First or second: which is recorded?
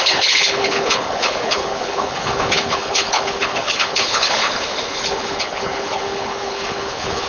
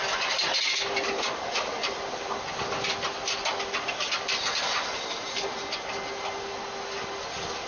second